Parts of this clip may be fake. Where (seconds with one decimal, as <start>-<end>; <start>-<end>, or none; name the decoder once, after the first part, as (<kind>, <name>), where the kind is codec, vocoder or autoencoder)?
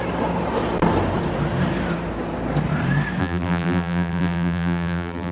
3.2-5.3 (vocoder, BigVGAN v2)